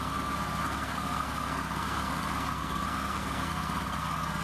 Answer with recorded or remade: remade